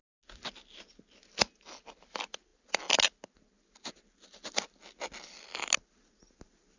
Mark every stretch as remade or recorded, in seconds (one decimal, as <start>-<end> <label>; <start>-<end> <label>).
0.0-6.8 recorded